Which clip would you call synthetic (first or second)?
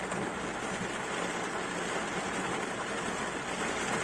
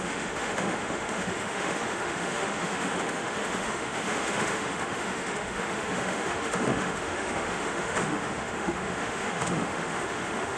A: second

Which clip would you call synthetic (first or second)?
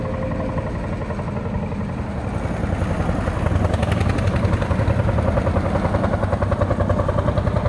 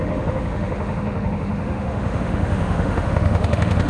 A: second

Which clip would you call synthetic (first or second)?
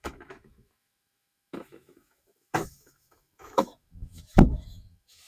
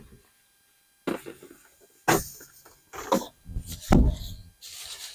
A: first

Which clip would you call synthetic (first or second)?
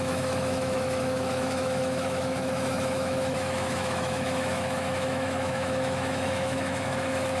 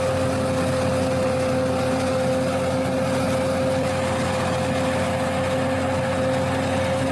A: first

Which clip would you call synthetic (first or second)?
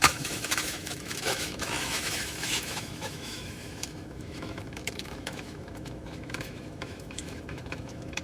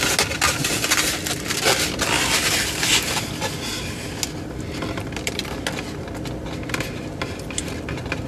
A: first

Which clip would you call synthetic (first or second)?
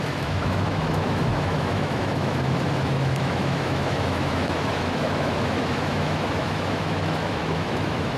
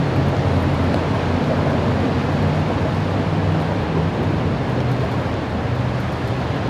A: first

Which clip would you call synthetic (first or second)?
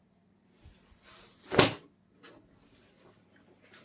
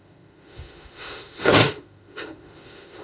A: second